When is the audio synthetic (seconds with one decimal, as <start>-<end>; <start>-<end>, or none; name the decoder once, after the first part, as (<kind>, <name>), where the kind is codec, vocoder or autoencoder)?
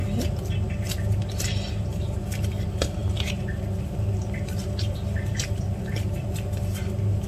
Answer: none